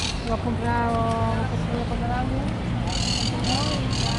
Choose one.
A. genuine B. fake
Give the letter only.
A